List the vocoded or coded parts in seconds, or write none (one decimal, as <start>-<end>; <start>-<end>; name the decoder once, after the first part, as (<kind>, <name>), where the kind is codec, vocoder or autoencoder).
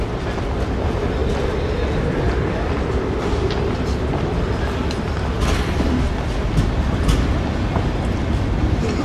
none